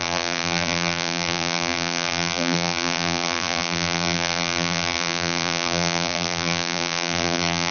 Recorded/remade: remade